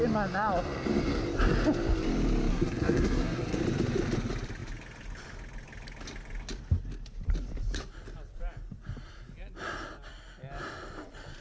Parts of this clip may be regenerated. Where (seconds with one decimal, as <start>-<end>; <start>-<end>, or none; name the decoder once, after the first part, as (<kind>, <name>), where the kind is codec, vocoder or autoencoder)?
2.5-3.6 (codec, SNAC)